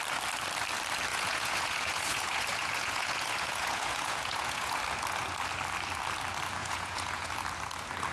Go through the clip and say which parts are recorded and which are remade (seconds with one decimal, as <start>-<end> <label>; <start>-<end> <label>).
0.0-1.1 recorded; 1.1-4.8 remade; 4.8-6.6 recorded; 6.6-7.3 remade; 7.3-8.1 recorded

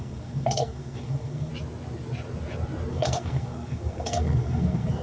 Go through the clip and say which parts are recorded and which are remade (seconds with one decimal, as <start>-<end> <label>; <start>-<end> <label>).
0.0-1.5 remade; 1.5-2.9 recorded; 2.9-5.0 remade

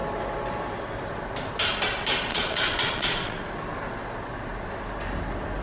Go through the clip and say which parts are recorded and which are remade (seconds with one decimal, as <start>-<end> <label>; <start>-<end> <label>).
0.0-2.3 recorded; 2.3-3.4 remade; 3.4-5.6 recorded

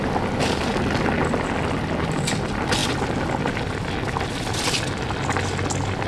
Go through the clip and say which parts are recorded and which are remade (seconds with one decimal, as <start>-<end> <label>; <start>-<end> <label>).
0.0-6.1 recorded

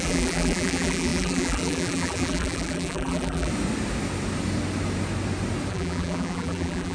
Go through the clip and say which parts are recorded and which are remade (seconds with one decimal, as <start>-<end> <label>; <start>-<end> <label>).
0.0-3.5 remade; 3.5-5.7 recorded; 5.7-6.9 remade

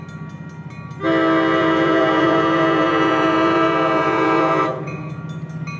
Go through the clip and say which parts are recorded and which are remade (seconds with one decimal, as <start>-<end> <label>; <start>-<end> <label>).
0.0-1.6 recorded; 1.6-5.1 remade; 5.1-5.8 recorded

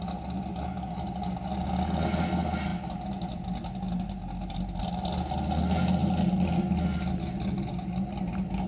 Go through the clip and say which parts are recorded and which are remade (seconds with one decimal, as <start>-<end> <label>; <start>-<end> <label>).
0.0-8.7 recorded

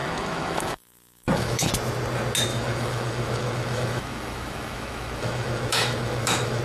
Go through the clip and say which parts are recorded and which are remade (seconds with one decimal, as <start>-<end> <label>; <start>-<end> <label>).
0.0-1.7 remade; 1.7-2.5 recorded; 2.5-6.6 remade